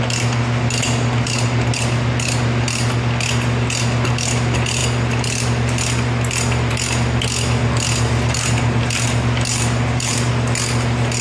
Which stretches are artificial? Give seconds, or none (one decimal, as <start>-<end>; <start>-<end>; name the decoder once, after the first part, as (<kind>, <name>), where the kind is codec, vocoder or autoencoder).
9.5-10.3 (vocoder, BigVGAN v2)

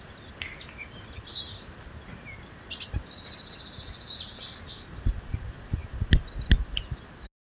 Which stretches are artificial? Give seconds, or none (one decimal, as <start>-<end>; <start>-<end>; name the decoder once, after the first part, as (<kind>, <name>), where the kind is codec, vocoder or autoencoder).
none

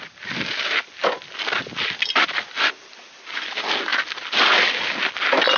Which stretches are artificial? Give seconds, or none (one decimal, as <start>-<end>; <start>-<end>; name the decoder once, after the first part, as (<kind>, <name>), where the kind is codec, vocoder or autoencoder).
none

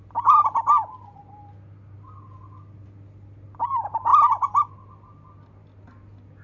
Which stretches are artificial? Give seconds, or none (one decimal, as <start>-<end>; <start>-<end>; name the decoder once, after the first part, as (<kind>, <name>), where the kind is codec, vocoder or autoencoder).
none

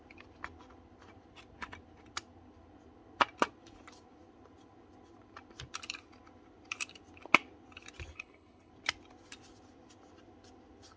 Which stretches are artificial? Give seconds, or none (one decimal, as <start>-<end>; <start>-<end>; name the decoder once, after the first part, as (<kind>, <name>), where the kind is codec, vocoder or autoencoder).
8.1-8.7 (codec, HILCodec)

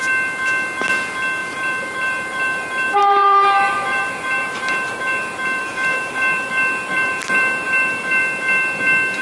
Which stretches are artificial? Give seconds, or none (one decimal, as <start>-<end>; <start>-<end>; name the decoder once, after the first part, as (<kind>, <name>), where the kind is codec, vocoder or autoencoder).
1.4-6.5 (vocoder, BigVGAN v2); 6.9-8.2

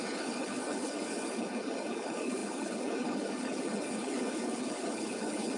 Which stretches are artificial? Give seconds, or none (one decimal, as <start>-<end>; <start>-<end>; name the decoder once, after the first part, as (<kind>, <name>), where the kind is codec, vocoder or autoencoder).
0.0-5.6 (codec, HILCodec)